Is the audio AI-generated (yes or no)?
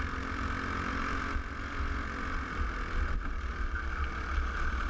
no